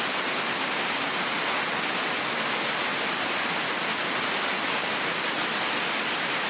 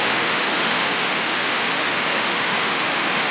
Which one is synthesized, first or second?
second